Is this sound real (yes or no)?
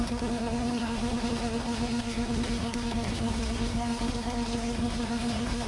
no